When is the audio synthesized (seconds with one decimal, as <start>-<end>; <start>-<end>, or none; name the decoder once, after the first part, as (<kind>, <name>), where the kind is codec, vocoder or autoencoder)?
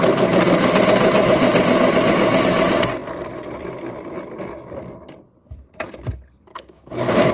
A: 6.5-7.3 (codec, DAC)